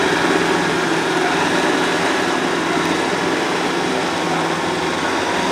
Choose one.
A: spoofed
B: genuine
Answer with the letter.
B